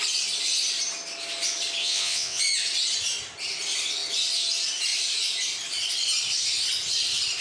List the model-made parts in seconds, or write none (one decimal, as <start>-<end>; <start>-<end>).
1.8-2.4